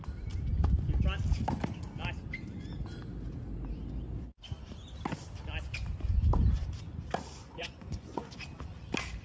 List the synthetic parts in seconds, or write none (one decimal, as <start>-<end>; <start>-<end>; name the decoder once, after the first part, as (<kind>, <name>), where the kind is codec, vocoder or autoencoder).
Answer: 7.4-8.3 (vocoder, Vocos)

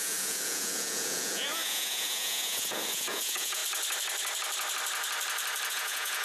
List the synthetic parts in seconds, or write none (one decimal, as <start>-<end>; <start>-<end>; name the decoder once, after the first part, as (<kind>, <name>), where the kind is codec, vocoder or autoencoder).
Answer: 0.0-3.6 (vocoder, Vocos); 5.7-6.2

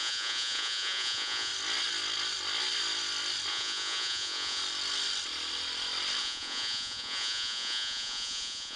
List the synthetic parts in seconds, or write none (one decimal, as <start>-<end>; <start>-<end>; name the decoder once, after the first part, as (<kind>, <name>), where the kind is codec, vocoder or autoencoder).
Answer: 0.0-1.5 (vocoder, Vocos); 3.5-4.6; 6.2-8.8

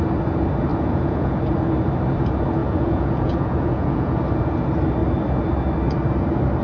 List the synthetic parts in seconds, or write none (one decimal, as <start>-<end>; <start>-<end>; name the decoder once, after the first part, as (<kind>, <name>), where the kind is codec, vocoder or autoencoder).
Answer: 0.7-1.4 (vocoder, Vocos); 2.6-4.2

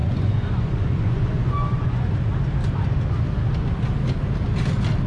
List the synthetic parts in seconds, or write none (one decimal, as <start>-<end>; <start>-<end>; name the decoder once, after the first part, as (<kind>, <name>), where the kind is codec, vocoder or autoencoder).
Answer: 0.0-2.1 (vocoder, Vocos)

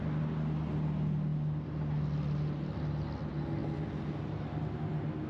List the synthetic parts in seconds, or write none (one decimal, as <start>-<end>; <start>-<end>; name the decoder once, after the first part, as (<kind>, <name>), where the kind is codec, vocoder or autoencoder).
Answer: none

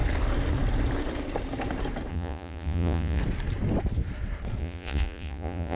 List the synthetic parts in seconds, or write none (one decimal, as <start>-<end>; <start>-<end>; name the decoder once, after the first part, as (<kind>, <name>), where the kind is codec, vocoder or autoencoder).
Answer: 2.1-3.2 (vocoder, Vocos); 4.6-5.8